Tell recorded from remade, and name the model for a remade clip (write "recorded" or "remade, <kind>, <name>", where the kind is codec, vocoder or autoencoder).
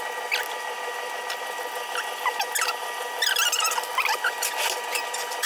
recorded